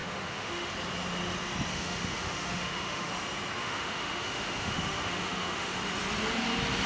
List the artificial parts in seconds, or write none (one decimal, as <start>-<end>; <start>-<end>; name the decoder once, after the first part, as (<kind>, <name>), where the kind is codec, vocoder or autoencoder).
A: 0.0-0.7 (autoencoder, DAC-VAE); 1.7-3.1; 3.6-5.8